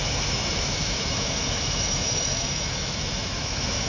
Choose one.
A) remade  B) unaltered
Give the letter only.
A